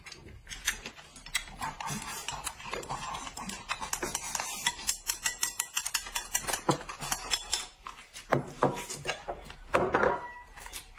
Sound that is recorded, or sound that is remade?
remade